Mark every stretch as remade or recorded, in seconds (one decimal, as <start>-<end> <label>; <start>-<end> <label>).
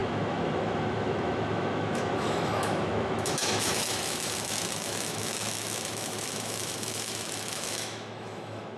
0.0-8.8 remade